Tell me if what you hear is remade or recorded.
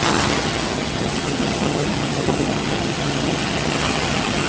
remade